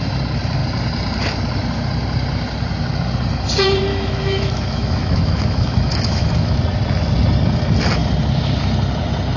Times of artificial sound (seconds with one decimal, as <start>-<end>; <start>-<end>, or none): 3.9-6.6